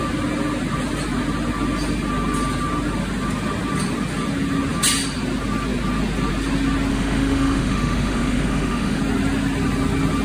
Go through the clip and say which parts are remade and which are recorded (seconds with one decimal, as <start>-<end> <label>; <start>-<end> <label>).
0.0-6.9 recorded; 6.9-9.0 remade; 9.0-10.2 recorded